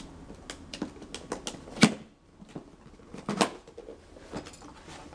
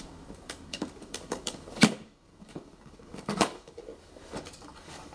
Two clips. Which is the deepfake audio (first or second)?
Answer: second